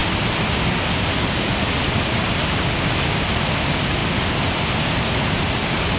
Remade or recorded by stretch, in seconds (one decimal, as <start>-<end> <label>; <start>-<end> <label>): 0.0-6.0 recorded